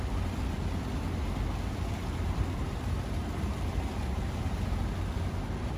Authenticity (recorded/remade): recorded